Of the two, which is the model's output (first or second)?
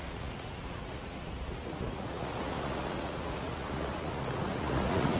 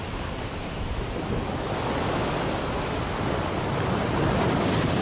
first